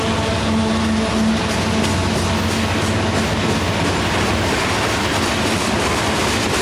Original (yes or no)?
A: yes